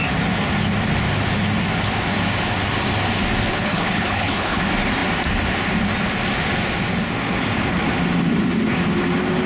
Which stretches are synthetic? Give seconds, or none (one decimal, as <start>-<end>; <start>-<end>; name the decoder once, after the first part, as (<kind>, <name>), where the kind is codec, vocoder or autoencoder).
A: 3.5-4.6 (codec, HILCodec)